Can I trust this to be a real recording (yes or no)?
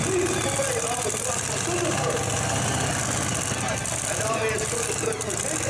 yes